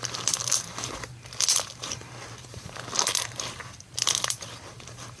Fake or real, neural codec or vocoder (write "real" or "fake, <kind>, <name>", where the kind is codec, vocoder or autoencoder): real